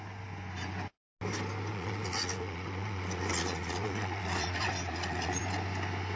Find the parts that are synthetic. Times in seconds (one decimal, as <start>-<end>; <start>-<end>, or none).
1.7-5.4